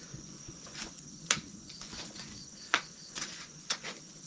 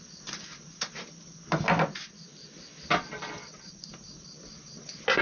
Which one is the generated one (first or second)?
first